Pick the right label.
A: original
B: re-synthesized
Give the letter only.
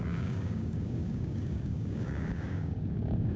B